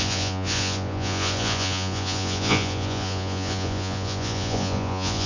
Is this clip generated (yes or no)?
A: yes